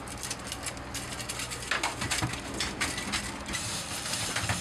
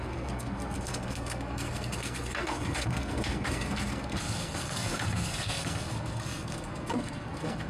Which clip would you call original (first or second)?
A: first